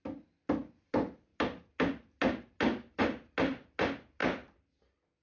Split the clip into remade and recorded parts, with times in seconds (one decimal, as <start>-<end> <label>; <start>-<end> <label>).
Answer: 0.0-5.2 recorded